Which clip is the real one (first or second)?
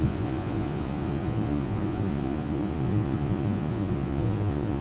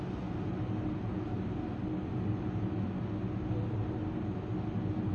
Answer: second